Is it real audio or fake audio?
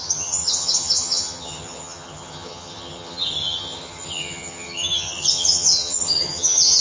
fake